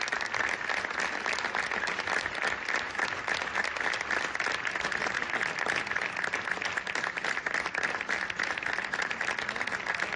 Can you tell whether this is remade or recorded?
recorded